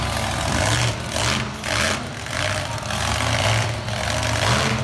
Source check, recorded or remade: recorded